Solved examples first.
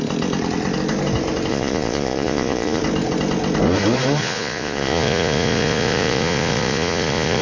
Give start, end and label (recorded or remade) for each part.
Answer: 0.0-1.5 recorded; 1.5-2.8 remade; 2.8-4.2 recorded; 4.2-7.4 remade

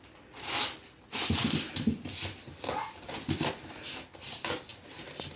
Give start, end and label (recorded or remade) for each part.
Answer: 0.0-5.4 recorded

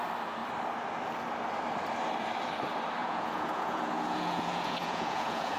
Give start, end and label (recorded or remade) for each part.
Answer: 0.0-3.0 recorded; 3.0-5.6 remade

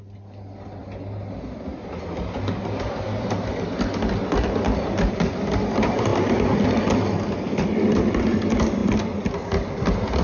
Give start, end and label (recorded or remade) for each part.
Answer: 0.0-10.2 recorded

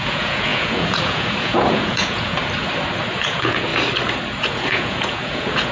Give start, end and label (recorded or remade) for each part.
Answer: 0.0-2.4 remade; 2.4-3.1 recorded; 3.1-3.7 remade; 3.7-4.4 recorded; 4.4-5.7 remade

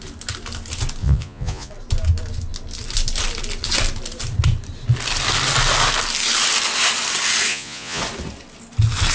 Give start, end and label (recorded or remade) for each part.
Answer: 0.0-1.0 recorded; 1.0-1.7 remade; 1.7-7.5 recorded; 7.5-8.0 remade; 8.0-9.1 recorded

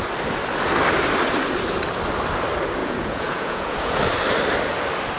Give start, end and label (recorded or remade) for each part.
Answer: 0.0-2.8 recorded; 2.8-4.0 remade; 4.0-5.2 recorded